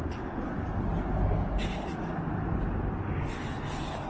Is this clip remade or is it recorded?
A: recorded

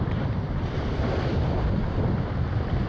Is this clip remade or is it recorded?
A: remade